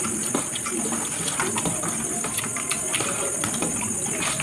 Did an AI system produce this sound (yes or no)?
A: no